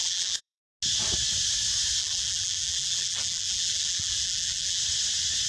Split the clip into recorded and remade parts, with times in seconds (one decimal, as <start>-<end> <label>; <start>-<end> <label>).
0.0-0.6 remade; 0.6-2.0 recorded; 2.0-4.8 remade; 4.8-5.5 recorded